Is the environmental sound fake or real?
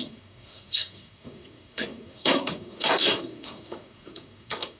fake